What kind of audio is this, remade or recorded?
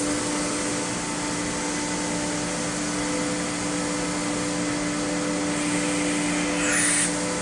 recorded